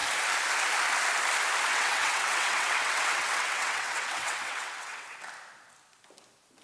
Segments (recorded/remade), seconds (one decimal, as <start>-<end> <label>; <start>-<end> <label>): 0.0-1.7 recorded; 1.7-5.2 remade; 5.2-6.6 recorded